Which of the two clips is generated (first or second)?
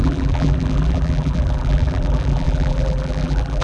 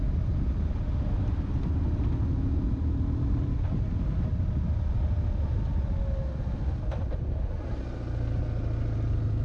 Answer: first